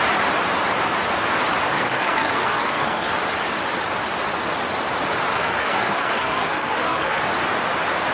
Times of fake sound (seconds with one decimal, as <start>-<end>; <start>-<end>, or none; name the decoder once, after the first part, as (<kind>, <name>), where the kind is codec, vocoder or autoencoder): 1.7-3.1 (codec, SNAC); 5.3-7.2